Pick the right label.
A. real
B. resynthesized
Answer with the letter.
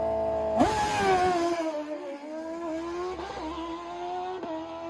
A